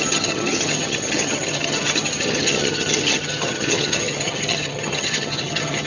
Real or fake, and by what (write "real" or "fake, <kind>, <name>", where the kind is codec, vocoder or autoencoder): fake, vocoder, HiFi-GAN